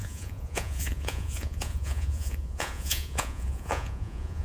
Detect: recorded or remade remade